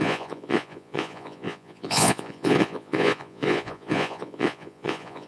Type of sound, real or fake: fake